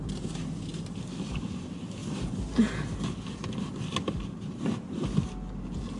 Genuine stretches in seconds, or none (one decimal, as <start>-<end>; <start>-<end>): 0.0-6.0